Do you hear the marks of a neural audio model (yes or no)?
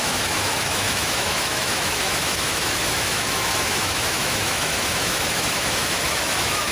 yes